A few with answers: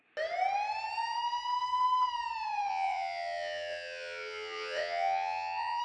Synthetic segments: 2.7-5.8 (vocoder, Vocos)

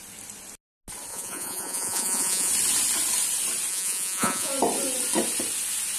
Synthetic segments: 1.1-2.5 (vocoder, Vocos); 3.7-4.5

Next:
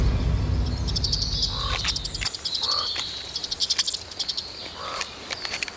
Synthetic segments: none

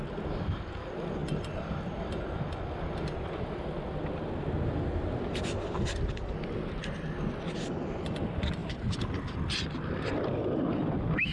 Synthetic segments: none

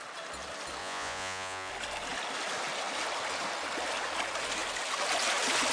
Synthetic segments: 0.8-1.7 (vocoder, Vocos)

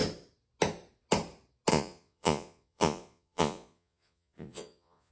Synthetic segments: 1.7-5.1 (vocoder, Vocos)